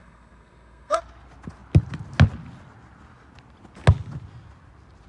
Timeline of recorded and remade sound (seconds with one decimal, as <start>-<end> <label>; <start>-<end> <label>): 0.0-1.0 remade; 1.0-5.1 recorded